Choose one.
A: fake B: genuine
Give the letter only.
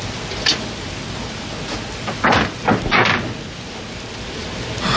B